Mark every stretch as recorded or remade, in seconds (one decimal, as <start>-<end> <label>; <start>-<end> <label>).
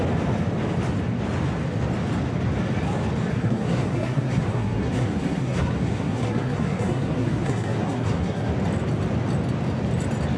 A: 0.0-3.3 recorded; 3.3-8.5 remade; 8.5-10.4 recorded